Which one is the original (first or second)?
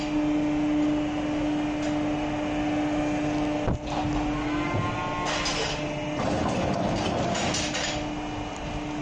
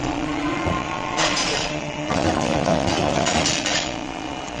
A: first